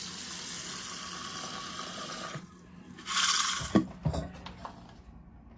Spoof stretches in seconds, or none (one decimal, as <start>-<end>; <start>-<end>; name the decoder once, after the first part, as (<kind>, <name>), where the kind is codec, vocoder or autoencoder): 1.9-2.5 (vocoder, Vocos)